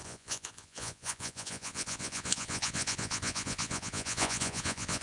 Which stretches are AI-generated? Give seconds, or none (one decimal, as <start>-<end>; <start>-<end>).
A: 0.0-5.0